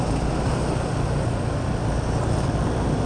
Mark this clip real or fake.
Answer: real